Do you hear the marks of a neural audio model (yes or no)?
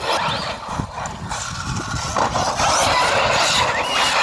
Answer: no